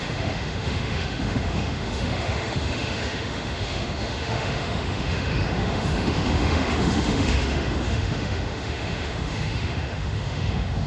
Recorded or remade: remade